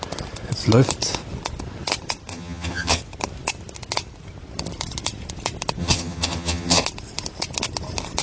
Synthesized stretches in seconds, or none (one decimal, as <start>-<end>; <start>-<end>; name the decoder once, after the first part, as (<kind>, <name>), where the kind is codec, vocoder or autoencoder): 2.3-3.0 (vocoder, HiFi-GAN); 5.8-6.8